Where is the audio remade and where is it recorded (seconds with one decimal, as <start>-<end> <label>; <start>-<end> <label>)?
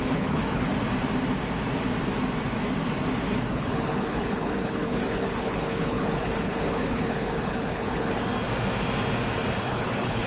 0.0-0.7 remade; 0.7-3.5 recorded; 3.5-8.3 remade; 8.3-9.6 recorded; 9.6-10.3 remade